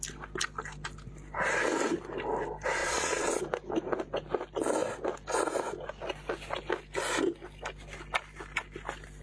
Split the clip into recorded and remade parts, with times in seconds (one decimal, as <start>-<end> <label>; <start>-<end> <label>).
0.0-2.8 recorded; 2.8-3.4 remade; 3.4-9.2 recorded